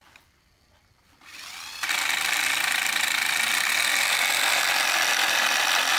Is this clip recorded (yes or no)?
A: yes